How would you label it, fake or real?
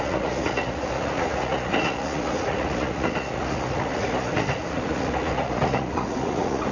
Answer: fake